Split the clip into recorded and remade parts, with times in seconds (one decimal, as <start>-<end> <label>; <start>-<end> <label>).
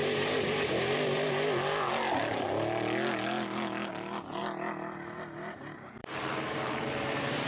0.0-1.3 remade; 1.3-6.0 recorded; 6.0-7.5 remade